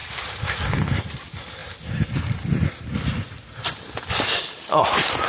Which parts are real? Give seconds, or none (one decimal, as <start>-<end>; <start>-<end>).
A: 0.0-5.3